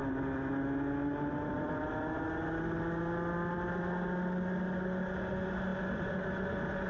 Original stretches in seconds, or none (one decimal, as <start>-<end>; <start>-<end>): 0.0-6.9